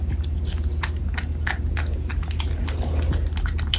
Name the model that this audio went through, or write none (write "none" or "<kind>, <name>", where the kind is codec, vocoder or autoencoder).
none